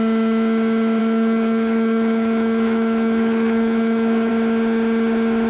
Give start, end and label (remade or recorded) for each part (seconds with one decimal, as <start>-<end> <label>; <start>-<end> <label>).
0.0-1.0 recorded; 1.0-4.3 remade; 4.3-5.5 recorded